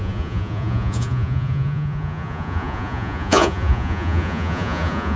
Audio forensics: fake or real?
fake